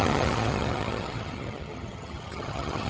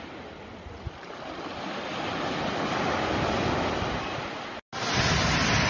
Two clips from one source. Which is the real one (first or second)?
second